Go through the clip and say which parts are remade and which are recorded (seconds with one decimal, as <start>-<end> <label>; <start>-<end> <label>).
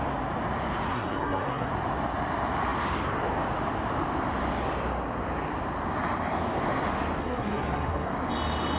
0.0-0.9 recorded; 0.9-1.7 remade; 1.7-7.2 recorded; 7.2-8.1 remade; 8.1-8.8 recorded